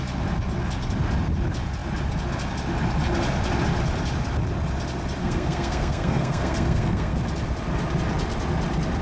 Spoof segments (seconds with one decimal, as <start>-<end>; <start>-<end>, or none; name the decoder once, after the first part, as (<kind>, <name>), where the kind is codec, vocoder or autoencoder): 5.2-7.2 (codec, SNAC)